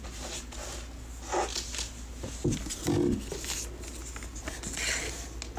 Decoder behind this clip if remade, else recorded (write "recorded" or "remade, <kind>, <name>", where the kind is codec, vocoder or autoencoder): recorded